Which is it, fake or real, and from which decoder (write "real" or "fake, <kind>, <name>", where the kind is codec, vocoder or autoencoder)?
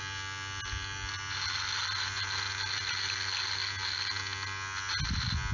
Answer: real